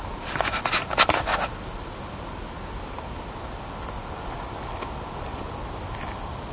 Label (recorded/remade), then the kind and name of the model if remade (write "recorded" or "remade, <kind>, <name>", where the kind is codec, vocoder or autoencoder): recorded